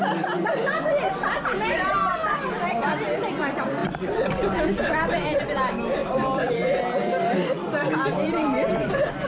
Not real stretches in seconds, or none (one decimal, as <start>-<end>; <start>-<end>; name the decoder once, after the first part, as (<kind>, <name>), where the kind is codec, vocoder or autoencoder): 3.8-5.4 (vocoder, BigVGAN v2); 6.0-8.9